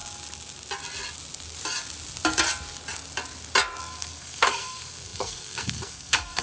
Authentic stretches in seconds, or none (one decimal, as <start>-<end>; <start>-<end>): 0.0-3.8